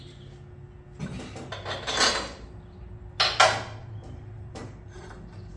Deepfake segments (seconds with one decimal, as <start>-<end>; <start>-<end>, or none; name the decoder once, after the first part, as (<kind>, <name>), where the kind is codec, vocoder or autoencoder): 3.8-5.0 (vocoder, BigVGAN v2)